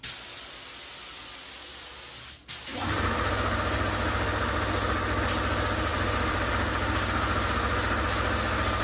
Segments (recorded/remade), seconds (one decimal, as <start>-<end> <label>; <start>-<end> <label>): 0.0-2.7 recorded; 2.7-3.3 remade; 3.3-5.9 recorded; 5.9-6.5 remade; 6.5-8.8 recorded